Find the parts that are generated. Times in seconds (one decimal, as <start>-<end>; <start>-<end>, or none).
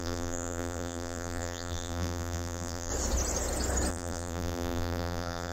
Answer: 0.0-2.9; 3.9-5.5